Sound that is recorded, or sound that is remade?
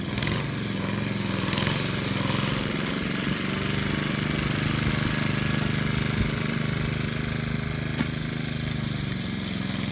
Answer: recorded